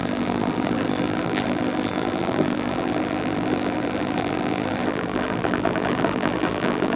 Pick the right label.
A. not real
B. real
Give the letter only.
A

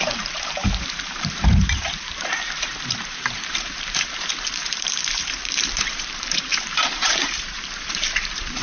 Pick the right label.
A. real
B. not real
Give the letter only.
B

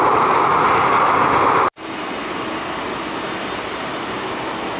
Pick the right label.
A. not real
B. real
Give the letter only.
B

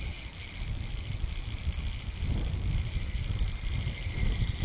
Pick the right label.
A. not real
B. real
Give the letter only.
B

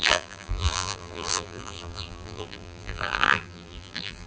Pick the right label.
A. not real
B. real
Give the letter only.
A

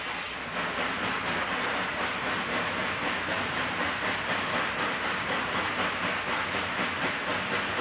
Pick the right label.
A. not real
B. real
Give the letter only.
B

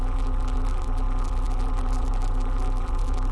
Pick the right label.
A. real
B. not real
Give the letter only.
B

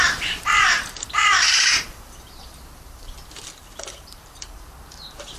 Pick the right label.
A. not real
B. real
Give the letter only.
A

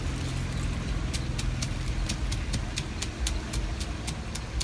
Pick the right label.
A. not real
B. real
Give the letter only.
B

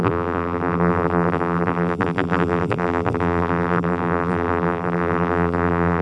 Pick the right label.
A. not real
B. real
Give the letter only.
A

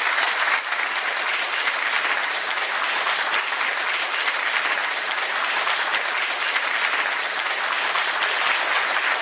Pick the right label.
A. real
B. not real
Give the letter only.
A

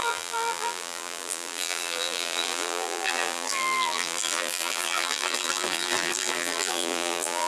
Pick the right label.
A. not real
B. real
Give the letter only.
A